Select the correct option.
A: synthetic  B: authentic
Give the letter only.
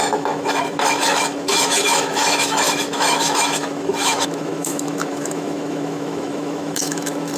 A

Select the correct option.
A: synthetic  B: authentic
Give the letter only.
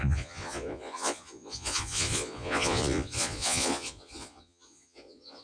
A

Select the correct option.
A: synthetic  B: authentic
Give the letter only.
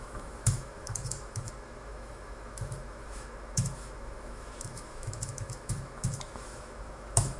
A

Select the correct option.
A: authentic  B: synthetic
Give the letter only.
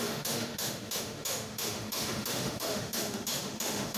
B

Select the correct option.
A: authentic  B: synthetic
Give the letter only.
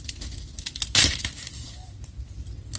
A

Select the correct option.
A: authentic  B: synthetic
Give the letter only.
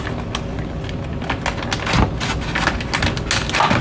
A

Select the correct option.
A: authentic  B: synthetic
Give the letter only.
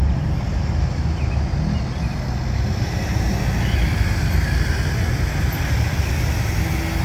A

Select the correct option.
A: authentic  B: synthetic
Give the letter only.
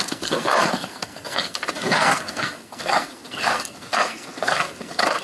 B